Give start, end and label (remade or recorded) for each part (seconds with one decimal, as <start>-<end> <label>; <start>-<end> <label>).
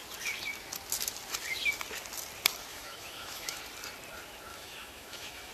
0.0-2.7 recorded; 2.7-3.6 remade; 3.6-4.5 recorded; 4.5-5.5 remade